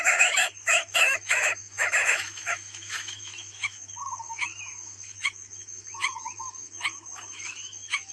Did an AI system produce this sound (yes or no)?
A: yes